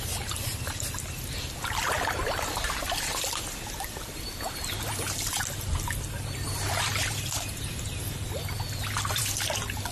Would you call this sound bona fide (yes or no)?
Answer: no